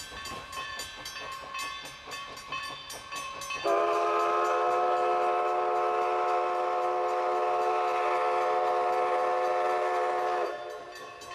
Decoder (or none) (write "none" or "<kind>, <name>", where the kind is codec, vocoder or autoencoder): none